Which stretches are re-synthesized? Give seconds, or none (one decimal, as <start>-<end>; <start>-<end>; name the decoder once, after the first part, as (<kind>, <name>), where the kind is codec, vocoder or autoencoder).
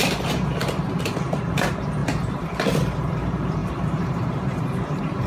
0.0-0.6 (vocoder, BigVGAN v2); 1.4-5.3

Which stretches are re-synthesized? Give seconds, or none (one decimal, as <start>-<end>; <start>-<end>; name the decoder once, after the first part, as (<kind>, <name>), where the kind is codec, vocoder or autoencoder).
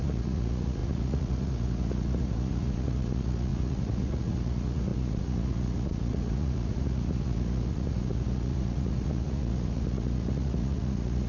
0.0-11.3 (vocoder, Vocos)